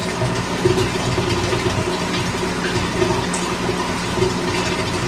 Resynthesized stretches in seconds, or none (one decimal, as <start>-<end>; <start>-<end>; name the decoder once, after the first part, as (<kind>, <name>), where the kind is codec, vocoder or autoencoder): none

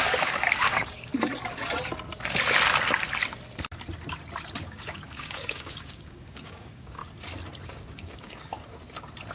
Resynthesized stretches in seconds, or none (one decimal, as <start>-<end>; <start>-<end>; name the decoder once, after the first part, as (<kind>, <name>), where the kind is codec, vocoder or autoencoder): 0.0-1.1 (codec, DAC); 4.6-7.0; 7.7-8.5

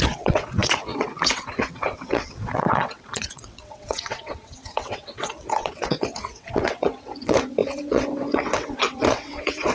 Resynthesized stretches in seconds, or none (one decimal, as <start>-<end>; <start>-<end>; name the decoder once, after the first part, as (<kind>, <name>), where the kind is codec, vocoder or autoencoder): 0.0-9.7 (vocoder, WaveNeXt)

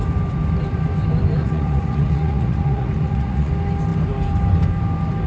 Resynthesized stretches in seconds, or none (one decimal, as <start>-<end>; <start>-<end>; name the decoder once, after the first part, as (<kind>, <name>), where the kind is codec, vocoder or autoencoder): 1.4-3.5 (vocoder, Vocos)

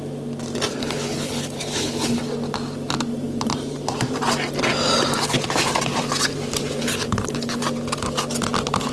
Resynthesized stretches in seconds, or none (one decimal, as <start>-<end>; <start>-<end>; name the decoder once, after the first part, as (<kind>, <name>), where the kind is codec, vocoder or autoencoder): 0.8-2.2 (codec, HILCodec); 6.8-7.6

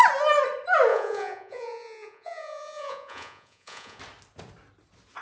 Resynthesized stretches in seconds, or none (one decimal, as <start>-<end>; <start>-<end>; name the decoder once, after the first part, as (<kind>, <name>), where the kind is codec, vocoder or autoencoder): 0.9-4.0 (vocoder, Vocos)

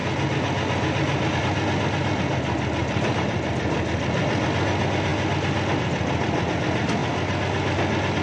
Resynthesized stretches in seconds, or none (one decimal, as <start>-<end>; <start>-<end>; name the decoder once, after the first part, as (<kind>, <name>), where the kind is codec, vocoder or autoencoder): 2.8-3.5 (vocoder, BigVGAN v2)